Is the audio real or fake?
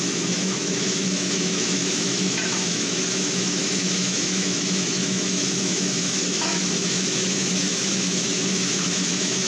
fake